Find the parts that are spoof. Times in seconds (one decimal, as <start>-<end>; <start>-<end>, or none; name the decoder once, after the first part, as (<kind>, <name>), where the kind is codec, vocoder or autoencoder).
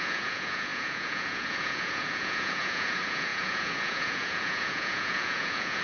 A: 0.0-5.8 (vocoder, Vocos)